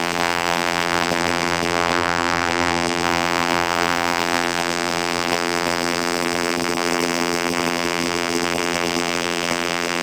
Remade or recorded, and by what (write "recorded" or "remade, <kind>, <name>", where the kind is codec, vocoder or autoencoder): remade, vocoder, BigVGAN v2